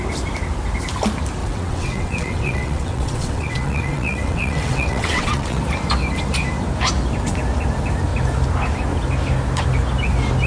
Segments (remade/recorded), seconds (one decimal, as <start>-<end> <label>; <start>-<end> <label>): 0.0-1.4 recorded; 1.4-5.6 remade; 5.6-10.5 recorded